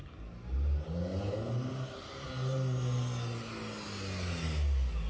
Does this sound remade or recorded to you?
recorded